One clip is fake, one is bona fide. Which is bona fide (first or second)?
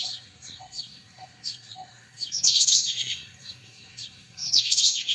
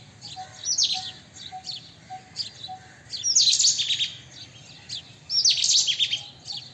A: second